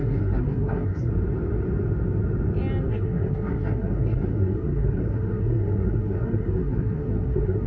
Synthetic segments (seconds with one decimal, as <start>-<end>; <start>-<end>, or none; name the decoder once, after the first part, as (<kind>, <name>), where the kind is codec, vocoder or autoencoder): 0.0-1.1 (codec, SNAC); 2.9-7.7